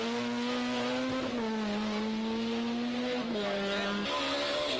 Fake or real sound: real